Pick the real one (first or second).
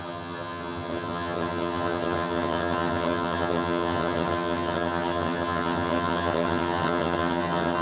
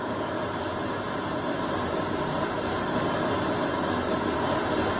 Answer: second